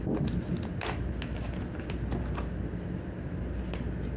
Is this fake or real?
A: real